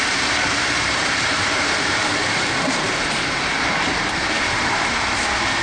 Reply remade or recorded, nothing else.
remade